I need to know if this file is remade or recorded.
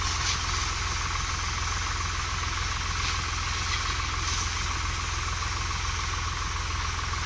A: recorded